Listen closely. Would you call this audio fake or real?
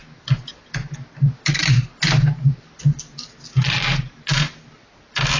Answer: real